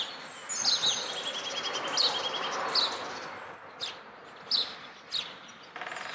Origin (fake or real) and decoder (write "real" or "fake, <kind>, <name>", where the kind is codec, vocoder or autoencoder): real